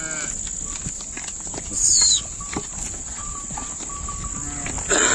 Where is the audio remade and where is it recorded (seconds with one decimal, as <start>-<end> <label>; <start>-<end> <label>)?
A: 0.0-5.1 recorded